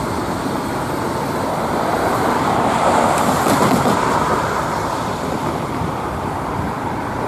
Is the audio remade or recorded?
remade